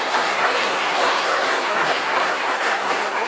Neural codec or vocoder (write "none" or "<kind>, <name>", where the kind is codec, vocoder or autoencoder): codec, SNAC